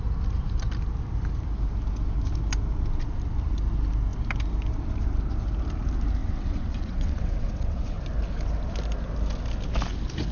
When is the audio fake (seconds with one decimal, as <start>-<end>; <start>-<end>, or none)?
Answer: 6.2-8.0